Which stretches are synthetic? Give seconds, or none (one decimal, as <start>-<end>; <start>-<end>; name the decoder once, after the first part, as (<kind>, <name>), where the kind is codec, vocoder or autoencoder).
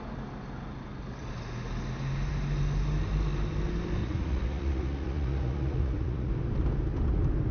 4.0-6.3 (vocoder, Vocos)